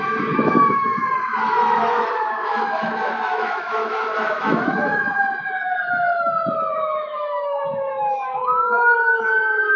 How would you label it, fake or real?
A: fake